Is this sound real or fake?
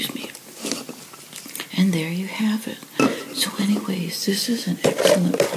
real